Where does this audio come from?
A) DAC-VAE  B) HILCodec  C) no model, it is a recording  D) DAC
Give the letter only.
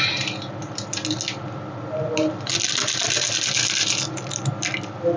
C